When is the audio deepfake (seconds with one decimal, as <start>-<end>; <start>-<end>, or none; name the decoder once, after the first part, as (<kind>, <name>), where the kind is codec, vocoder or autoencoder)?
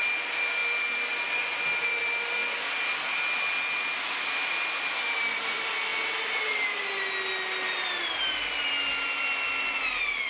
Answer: none